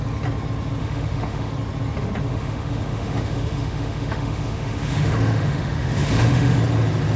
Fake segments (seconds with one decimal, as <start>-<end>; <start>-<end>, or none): 0.8-1.5; 2.3-6.6